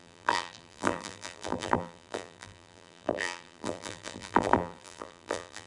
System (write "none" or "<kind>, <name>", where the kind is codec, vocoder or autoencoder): vocoder, BigVGAN v2